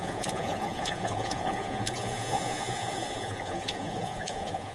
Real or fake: fake